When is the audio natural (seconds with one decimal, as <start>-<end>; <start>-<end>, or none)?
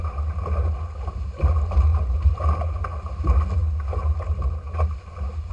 0.0-5.5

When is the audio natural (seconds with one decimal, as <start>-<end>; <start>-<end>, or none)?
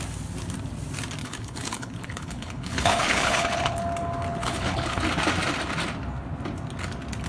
0.0-1.2; 3.8-4.3; 5.0-7.3